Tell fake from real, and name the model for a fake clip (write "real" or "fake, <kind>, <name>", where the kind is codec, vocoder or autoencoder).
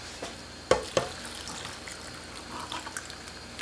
real